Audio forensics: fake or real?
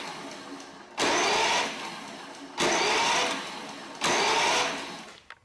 real